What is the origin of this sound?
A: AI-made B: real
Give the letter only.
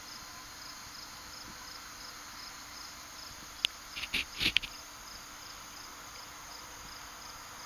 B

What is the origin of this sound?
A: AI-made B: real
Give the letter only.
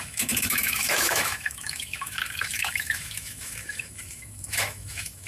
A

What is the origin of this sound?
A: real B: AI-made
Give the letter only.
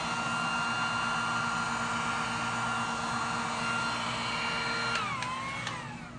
A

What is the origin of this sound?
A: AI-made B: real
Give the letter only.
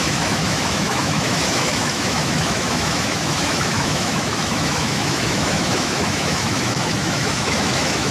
A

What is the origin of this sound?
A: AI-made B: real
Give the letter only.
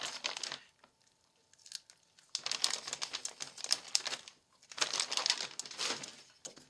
B